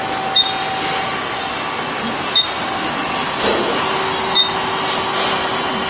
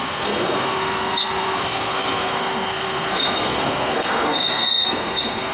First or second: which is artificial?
second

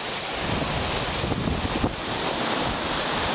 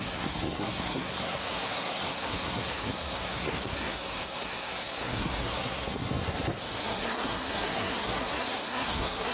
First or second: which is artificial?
second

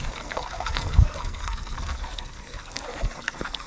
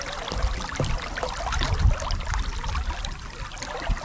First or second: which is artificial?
first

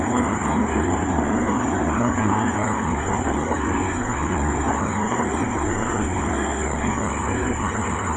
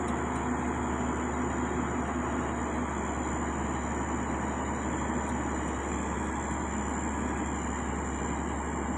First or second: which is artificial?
first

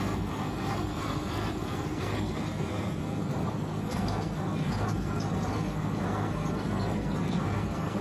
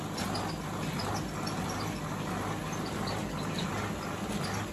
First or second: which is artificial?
first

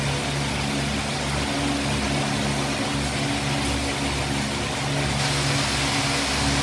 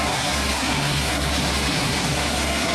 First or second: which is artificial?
second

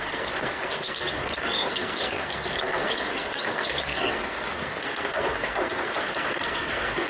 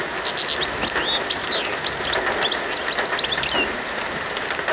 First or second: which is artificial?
first